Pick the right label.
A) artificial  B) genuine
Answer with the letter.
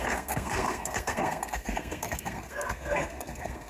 A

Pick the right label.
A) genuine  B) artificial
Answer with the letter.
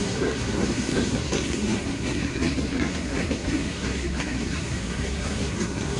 B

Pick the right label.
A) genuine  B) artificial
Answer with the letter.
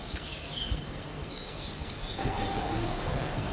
B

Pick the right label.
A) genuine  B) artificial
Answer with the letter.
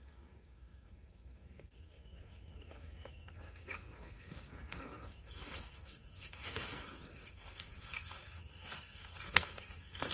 B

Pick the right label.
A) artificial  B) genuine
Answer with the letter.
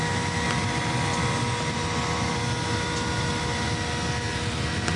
B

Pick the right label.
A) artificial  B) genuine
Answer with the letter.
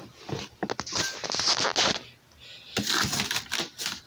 B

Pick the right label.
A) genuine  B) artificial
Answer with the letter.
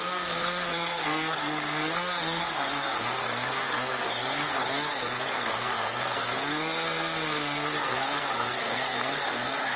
B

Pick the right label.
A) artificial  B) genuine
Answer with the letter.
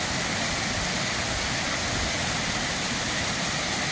B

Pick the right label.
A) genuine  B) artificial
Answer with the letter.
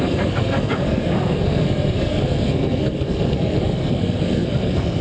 B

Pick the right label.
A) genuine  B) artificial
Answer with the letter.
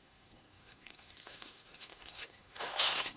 B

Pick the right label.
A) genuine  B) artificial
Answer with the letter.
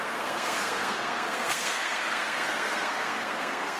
B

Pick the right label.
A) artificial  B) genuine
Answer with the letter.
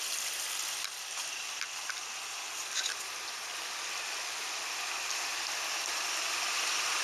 B